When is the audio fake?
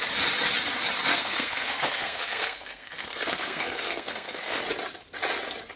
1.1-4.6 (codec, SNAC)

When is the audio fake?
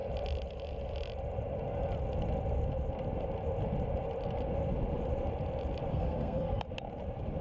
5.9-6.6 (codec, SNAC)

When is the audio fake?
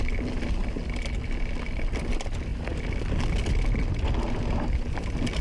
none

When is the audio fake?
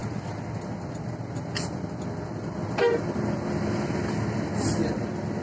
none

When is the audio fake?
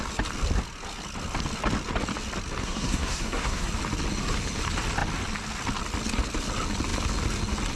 2.6-3.7 (codec, SNAC)